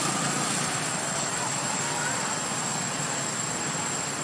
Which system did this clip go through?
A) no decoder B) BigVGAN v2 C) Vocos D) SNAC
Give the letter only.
A